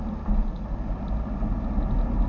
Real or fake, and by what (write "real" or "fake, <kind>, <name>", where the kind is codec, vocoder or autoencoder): real